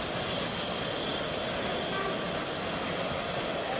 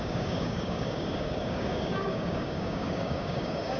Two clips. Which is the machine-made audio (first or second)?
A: second